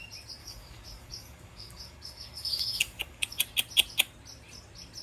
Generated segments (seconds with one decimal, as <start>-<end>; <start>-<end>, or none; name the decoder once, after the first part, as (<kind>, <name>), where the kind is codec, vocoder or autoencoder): 0.4-3.4 (codec, DAC)